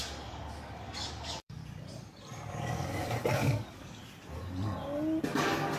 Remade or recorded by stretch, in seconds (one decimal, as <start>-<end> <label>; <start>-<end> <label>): 0.0-1.6 remade; 1.6-2.5 recorded; 2.5-4.0 remade; 4.0-5.3 recorded; 5.3-5.8 remade

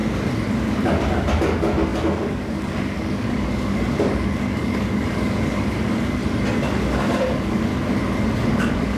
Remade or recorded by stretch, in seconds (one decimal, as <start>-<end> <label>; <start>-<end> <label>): 0.0-0.7 recorded; 0.7-6.2 remade; 6.2-6.8 recorded; 6.8-7.7 remade; 7.7-8.5 recorded; 8.5-9.0 remade

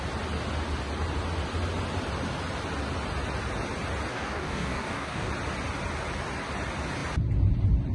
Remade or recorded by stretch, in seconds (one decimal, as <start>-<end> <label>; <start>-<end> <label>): 0.0-4.1 recorded; 4.1-5.3 remade; 5.3-7.9 recorded

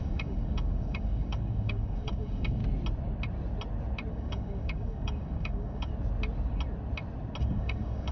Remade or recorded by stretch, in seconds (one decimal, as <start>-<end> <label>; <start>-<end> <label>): 0.0-2.6 remade; 2.6-4.1 recorded; 4.1-5.9 remade; 5.9-7.4 recorded; 7.4-8.1 remade

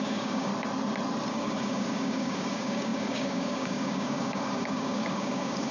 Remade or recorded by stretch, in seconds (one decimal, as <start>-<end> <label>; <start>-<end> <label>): 0.0-0.5 remade; 0.5-1.3 recorded; 1.3-5.7 remade

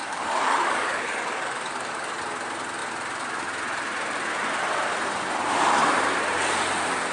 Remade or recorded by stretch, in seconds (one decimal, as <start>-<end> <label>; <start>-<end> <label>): 0.0-2.2 remade; 2.2-7.1 recorded

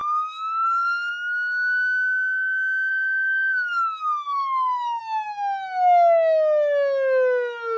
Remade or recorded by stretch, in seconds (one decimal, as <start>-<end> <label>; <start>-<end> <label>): 0.0-1.1 remade; 1.1-2.9 recorded; 2.9-5.0 remade; 5.0-7.8 recorded